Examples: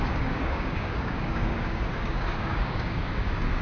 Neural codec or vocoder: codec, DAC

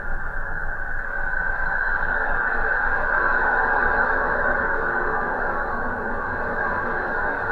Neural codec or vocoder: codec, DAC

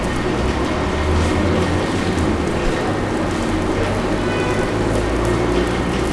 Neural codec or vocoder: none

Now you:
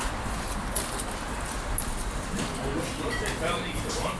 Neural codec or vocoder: none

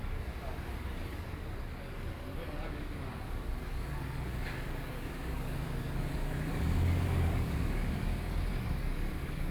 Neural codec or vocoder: codec, DAC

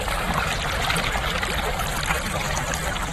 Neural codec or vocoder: none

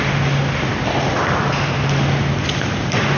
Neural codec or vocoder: none